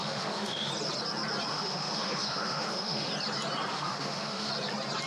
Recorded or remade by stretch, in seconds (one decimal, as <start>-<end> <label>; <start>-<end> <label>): 0.0-0.7 remade; 0.7-1.5 recorded; 1.5-3.1 remade; 3.1-3.7 recorded; 3.7-4.5 remade; 4.5-5.1 recorded